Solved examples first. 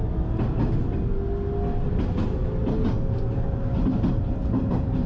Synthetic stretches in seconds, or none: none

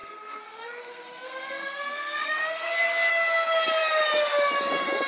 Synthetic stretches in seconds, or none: 0.0-3.1 (codec, SNAC)